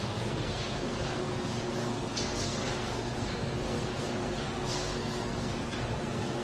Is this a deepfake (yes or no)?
yes